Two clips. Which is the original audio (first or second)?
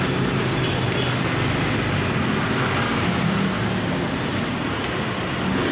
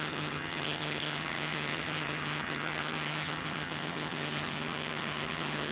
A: first